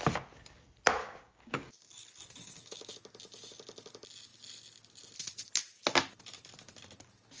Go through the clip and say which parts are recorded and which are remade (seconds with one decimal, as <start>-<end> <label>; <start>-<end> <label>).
0.0-1.0 recorded; 1.0-1.7 remade; 1.7-2.4 recorded; 2.4-2.9 remade; 2.9-7.4 recorded